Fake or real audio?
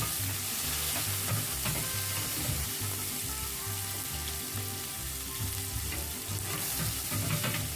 real